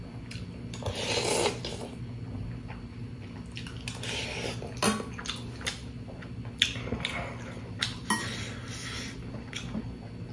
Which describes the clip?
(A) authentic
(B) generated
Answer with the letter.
A